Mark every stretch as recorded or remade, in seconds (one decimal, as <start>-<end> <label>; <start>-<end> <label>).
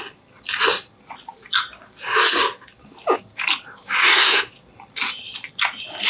0.0-4.0 recorded; 4.0-4.5 remade; 4.5-6.1 recorded